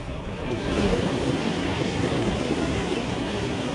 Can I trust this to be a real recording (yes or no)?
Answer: no